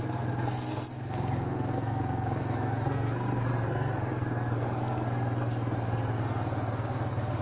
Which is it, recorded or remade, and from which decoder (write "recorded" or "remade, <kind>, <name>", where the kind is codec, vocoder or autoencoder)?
remade, codec, SNAC